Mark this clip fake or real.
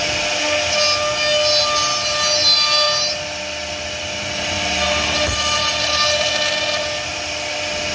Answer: real